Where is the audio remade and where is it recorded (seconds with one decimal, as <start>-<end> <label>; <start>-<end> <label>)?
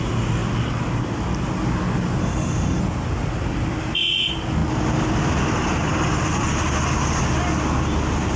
0.0-2.2 recorded; 2.2-2.8 remade; 2.8-8.4 recorded